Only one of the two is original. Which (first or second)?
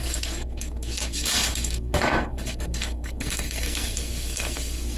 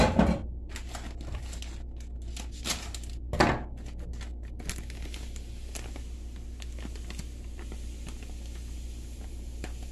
second